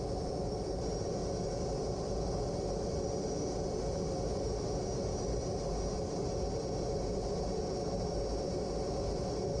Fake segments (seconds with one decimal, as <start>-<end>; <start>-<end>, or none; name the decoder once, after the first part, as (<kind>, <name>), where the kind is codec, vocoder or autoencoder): none

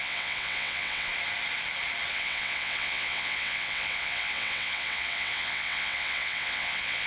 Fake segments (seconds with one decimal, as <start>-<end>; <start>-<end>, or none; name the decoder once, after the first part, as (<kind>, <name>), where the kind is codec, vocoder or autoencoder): 0.0-1.1 (vocoder, WaveNeXt); 2.1-7.1

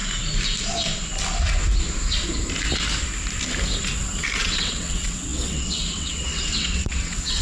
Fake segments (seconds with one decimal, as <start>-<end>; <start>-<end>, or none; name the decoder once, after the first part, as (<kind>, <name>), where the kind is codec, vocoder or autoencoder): 4.4-7.4 (vocoder, WaveNeXt)

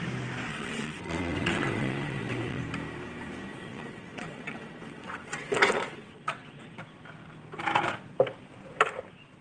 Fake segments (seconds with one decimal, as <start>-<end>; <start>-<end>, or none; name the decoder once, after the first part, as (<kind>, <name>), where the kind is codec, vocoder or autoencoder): 0.5-2.6 (vocoder, WaveNeXt); 3.5-6.8

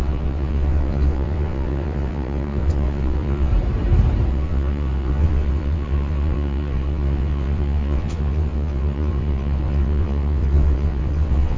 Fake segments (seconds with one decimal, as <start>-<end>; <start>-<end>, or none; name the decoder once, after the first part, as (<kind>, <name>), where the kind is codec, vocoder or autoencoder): 0.0-3.5 (vocoder, WaveNeXt); 4.3-11.6

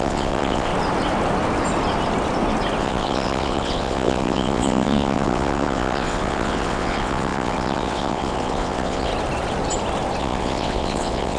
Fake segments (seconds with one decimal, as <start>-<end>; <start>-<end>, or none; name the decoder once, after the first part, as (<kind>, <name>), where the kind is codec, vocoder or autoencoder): 0.0-0.7 (vocoder, WaveNeXt); 2.8-9.1; 10.2-11.4

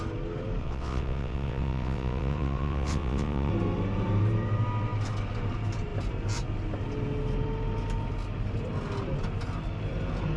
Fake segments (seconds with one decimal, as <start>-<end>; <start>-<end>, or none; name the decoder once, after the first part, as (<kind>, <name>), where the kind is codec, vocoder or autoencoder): 0.6-3.5 (vocoder, WaveNeXt)